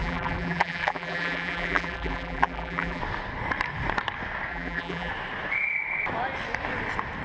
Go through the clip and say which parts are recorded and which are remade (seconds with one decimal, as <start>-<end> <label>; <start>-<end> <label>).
0.0-3.0 remade; 3.0-4.5 recorded; 4.5-5.1 remade; 5.1-7.2 recorded